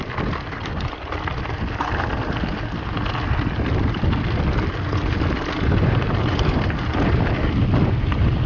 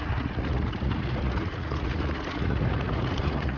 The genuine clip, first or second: first